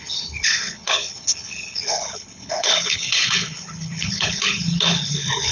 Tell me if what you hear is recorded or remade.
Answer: remade